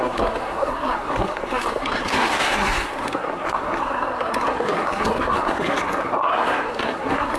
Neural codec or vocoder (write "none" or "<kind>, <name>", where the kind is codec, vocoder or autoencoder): codec, SNAC